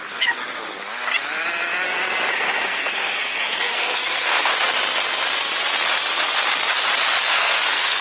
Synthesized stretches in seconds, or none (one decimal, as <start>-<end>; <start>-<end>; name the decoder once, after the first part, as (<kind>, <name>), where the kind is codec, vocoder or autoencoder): 0.0-0.4 (codec, SNAC); 2.3-4.5; 7.3-8.0